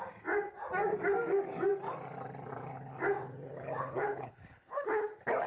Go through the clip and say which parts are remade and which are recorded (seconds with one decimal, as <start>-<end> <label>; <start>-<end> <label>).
0.0-3.8 recorded; 3.8-5.1 remade; 5.1-5.5 recorded